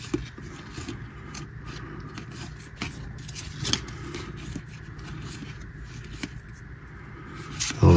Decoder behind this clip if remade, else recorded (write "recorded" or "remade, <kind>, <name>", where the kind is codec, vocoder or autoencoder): recorded